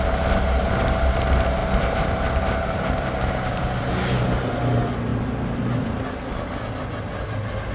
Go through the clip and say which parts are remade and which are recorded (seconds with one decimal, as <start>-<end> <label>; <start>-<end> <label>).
0.0-1.6 recorded; 1.6-3.9 remade; 3.9-7.7 recorded